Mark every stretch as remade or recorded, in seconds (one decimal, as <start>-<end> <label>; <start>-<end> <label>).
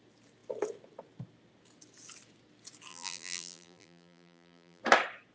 0.0-2.9 recorded; 2.9-4.8 remade; 4.8-5.3 recorded